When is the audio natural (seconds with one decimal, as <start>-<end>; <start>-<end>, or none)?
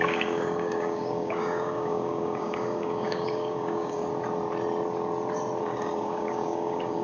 4.1-5.6